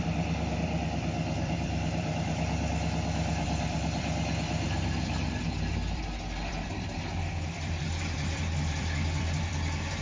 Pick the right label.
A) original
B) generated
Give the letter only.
B